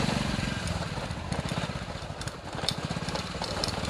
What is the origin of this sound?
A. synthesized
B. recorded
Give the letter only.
B